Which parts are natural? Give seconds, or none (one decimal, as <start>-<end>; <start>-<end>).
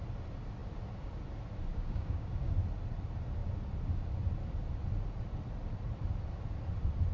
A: 0.0-1.7; 2.5-7.1